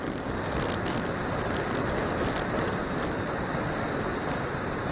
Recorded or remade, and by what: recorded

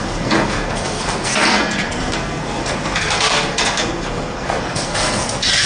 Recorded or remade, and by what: remade, codec, SNAC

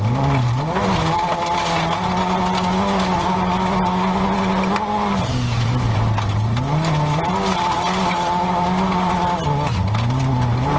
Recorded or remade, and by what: recorded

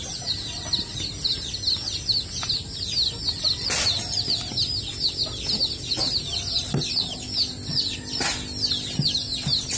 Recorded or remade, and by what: recorded